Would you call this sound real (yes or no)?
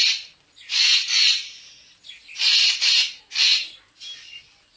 yes